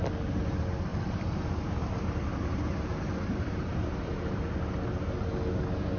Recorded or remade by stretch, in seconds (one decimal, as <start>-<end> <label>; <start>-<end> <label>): 0.0-0.9 recorded; 0.9-4.5 remade; 4.5-6.0 recorded